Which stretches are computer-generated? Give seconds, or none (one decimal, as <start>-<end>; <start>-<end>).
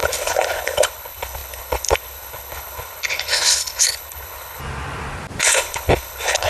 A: 0.0-4.6; 5.4-6.5